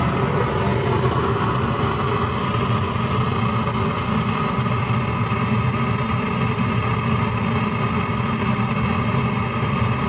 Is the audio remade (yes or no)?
no